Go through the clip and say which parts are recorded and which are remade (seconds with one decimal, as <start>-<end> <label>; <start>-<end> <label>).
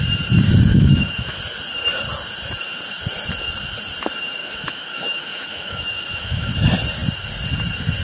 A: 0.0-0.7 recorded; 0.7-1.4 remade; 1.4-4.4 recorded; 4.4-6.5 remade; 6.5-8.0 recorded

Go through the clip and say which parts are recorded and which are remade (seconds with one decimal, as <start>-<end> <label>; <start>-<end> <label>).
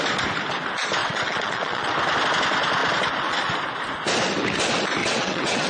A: 0.0-1.0 recorded; 1.0-1.9 remade; 1.9-5.0 recorded; 5.0-5.7 remade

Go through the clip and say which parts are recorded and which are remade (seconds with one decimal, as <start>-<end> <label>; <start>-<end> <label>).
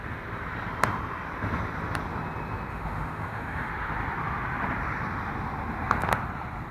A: 0.0-2.7 recorded; 2.7-3.7 remade; 3.7-6.7 recorded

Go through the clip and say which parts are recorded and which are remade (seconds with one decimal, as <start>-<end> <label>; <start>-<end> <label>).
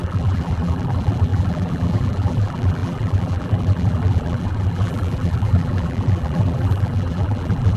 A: 0.0-7.8 remade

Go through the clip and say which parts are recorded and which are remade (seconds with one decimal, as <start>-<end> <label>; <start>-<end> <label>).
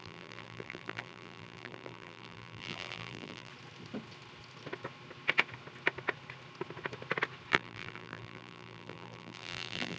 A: 0.0-3.5 remade; 3.5-7.5 recorded; 7.5-10.0 remade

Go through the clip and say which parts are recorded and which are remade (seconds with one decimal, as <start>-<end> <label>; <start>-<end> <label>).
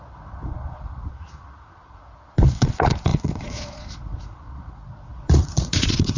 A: 0.0-6.2 remade